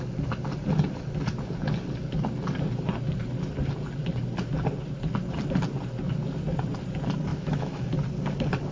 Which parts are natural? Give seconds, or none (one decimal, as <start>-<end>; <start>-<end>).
0.0-7.3; 7.9-8.7